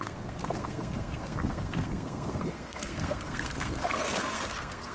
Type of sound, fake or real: fake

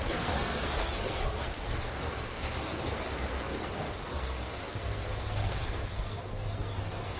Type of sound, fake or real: fake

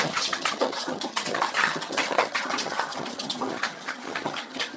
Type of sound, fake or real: fake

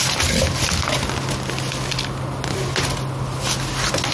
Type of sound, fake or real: real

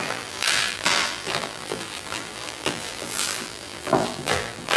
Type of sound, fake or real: fake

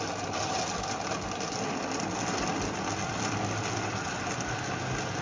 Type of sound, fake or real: real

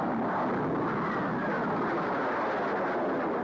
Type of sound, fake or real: real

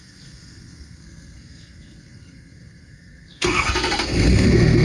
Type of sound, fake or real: fake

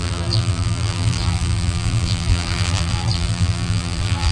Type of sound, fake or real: fake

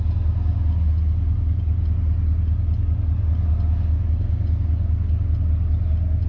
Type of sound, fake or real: real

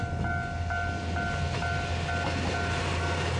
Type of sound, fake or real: real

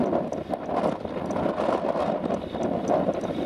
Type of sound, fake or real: real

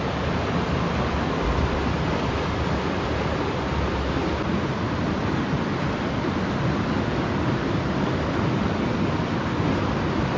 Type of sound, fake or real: real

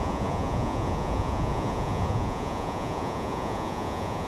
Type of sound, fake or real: fake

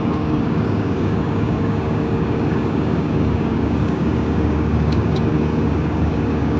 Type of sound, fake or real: fake